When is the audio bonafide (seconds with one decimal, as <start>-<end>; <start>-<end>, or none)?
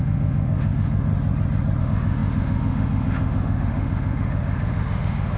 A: 1.1-1.8